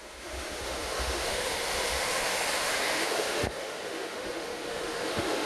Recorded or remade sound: remade